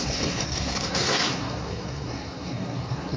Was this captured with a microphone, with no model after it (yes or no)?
no